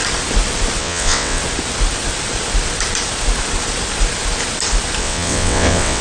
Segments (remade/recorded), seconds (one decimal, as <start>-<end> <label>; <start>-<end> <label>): 0.0-0.8 recorded; 0.8-1.4 remade; 1.4-5.0 recorded; 5.0-6.0 remade